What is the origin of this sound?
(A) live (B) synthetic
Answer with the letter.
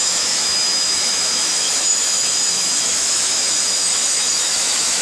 B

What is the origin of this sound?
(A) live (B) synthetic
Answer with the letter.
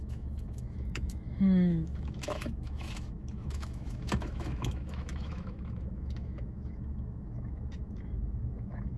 B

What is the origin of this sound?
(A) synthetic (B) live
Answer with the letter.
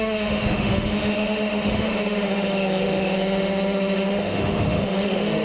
A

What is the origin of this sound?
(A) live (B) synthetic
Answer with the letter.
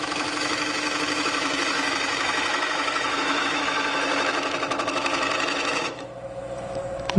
B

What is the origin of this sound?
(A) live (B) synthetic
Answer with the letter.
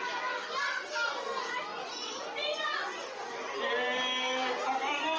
A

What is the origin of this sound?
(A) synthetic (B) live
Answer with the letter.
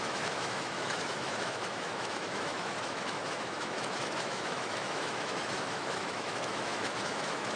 A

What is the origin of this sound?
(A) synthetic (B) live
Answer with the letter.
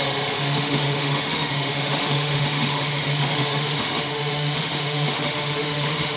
A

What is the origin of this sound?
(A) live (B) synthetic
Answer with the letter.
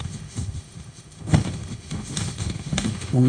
B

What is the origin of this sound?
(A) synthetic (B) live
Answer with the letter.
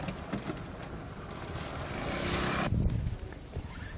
B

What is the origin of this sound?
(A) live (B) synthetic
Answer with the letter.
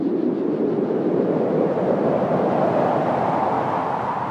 A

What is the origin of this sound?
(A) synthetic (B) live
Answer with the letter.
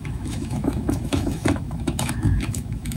A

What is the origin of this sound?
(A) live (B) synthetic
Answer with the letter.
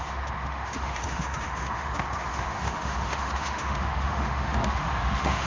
B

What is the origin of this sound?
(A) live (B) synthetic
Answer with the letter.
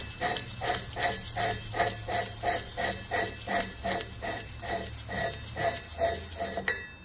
A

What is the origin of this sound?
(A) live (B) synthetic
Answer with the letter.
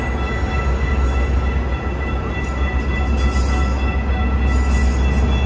A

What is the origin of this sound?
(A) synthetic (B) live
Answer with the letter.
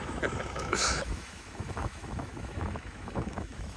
A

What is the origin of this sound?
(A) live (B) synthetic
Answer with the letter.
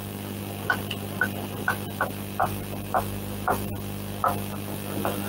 A